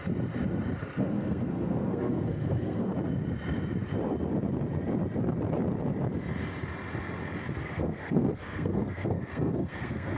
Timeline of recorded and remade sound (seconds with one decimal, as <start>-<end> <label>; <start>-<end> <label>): 0.0-1.0 recorded; 1.0-2.9 remade; 2.9-7.6 recorded; 7.6-10.2 remade